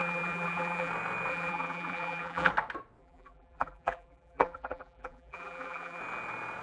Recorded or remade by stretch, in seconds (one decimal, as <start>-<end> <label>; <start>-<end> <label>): 0.0-0.9 remade; 0.9-1.3 recorded; 1.3-2.5 remade; 2.5-3.0 recorded; 3.0-6.0 remade; 6.0-6.6 recorded